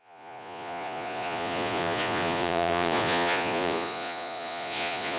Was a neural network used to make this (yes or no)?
yes